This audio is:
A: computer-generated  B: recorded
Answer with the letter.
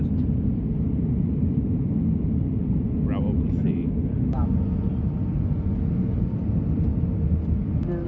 B